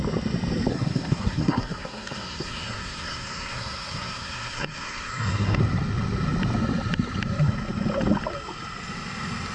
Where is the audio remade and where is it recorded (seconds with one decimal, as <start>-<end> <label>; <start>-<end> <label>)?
0.0-0.7 recorded; 0.7-5.6 remade; 5.6-9.5 recorded